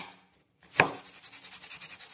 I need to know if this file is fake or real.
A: real